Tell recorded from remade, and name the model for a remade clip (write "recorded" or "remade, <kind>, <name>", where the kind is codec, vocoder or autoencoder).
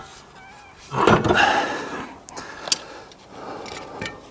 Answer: recorded